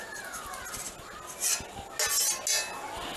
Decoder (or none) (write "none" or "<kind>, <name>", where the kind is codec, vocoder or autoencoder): none